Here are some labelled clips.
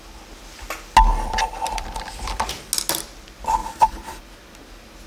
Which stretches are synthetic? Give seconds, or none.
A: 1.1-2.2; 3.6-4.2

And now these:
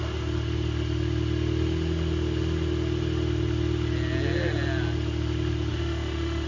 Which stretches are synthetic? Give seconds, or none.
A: 5.7-6.5

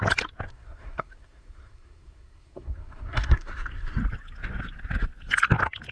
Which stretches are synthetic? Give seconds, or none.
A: 0.5-4.0

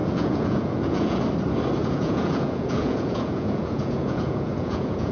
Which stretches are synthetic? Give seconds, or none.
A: 0.0-1.2; 1.8-5.1

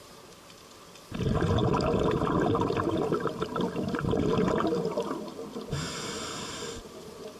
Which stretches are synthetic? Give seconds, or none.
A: 1.6-5.0

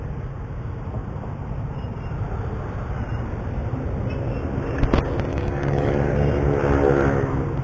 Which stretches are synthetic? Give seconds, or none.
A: 5.3-6.1

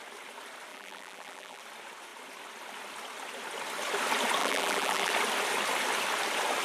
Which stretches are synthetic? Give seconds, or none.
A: 0.7-1.6; 4.4-5.1